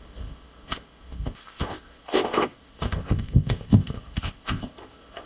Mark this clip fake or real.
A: fake